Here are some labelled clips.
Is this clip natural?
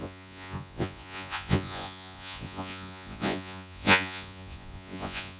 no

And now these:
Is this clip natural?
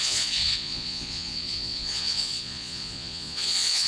no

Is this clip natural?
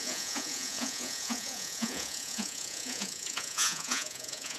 no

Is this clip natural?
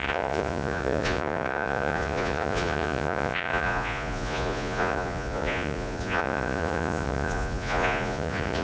no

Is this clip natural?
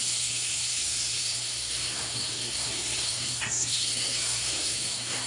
no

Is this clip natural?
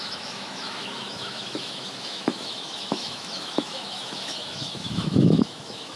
no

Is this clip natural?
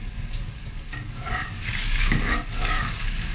no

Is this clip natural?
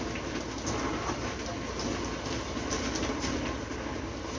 yes